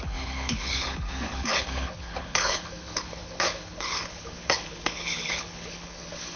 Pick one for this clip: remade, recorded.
remade